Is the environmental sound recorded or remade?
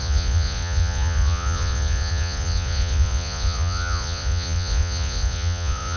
remade